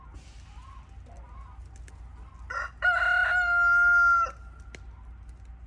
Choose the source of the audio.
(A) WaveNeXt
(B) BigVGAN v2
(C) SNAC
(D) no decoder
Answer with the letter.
D